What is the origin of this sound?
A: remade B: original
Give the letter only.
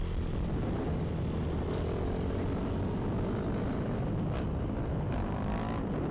B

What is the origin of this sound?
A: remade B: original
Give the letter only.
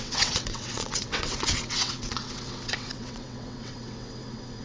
A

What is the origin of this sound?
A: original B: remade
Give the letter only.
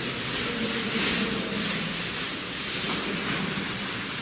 A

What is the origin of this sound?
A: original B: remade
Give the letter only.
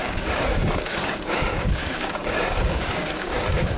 B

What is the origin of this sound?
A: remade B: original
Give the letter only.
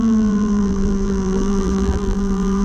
A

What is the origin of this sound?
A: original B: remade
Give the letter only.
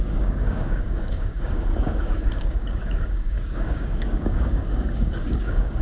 B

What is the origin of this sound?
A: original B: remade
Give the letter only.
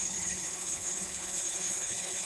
B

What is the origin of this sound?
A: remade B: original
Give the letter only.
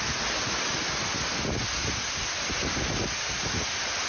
B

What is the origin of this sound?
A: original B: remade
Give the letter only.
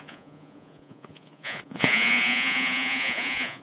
B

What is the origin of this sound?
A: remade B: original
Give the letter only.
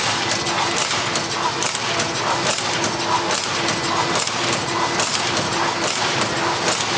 B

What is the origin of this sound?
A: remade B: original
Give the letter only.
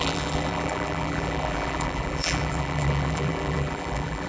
A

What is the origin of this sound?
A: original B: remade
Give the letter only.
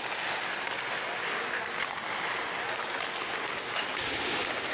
A